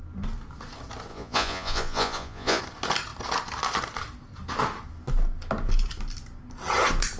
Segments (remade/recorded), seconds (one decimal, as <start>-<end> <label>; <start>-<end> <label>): 0.0-1.1 recorded; 1.1-2.6 remade; 2.6-7.2 recorded